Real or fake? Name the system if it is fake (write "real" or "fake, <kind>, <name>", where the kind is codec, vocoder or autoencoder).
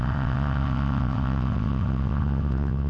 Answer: fake, vocoder, WaveNeXt